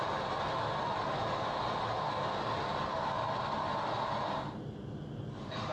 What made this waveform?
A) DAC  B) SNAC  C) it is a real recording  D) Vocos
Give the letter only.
C